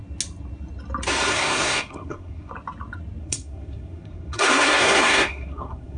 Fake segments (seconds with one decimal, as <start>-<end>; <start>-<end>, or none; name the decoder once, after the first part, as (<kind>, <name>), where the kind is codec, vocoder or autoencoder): 1.3-2.5 (codec, SNAC); 3.2-6.0